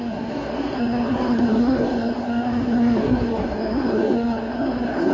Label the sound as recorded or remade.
remade